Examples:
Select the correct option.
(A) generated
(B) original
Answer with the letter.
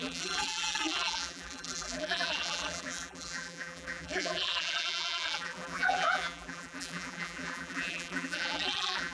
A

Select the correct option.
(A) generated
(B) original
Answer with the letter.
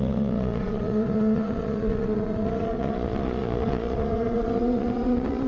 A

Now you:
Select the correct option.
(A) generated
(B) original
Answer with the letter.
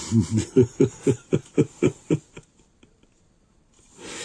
A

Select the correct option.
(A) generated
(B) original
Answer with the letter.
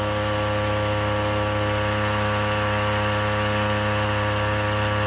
B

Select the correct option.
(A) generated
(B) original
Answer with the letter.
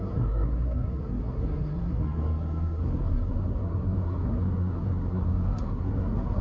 A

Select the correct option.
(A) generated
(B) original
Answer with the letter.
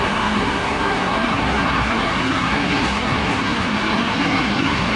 A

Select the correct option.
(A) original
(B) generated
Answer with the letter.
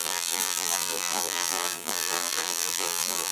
B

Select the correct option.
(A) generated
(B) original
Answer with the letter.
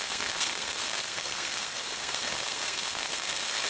A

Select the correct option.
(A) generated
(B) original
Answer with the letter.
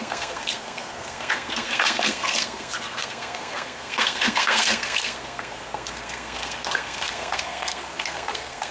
A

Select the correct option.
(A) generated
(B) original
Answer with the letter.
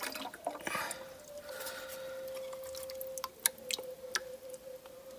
B